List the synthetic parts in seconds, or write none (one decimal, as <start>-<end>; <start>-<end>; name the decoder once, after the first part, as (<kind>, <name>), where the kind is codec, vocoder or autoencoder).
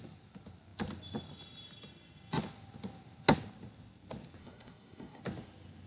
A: 4.4-5.2 (codec, SNAC)